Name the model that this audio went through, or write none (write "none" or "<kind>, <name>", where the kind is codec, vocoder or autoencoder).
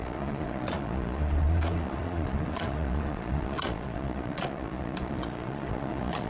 vocoder, Vocos